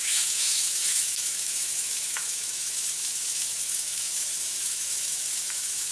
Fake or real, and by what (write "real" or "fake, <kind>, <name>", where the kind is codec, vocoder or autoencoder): fake, autoencoder, DAC-VAE